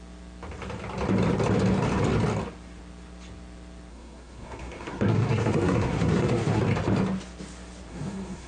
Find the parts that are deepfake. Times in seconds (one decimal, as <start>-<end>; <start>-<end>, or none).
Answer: 3.9-6.6; 7.9-8.5